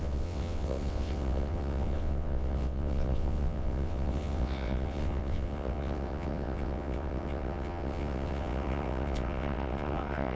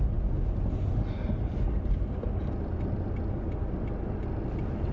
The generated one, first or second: first